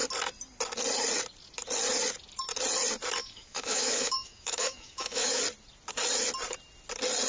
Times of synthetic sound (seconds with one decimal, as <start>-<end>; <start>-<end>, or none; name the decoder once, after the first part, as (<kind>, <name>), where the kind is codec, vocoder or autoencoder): 3.2-5.4 (autoencoder, DAC-VAE)